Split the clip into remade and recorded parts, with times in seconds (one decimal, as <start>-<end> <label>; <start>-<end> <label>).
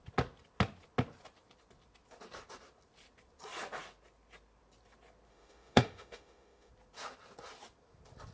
0.0-5.3 recorded; 5.3-6.7 remade; 6.7-8.3 recorded